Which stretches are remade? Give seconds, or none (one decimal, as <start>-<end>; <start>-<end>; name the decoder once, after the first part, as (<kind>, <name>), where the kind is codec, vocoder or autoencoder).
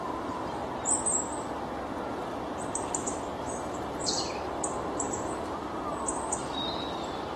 0.0-0.6 (vocoder, BigVGAN v2); 3.6-7.4